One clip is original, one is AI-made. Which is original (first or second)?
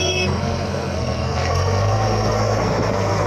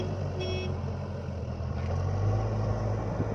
second